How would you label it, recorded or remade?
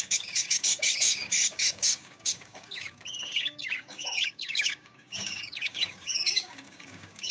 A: remade